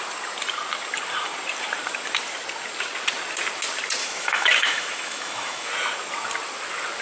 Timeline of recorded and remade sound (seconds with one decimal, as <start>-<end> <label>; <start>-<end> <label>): 0.0-4.0 recorded; 4.0-5.7 remade; 5.7-7.0 recorded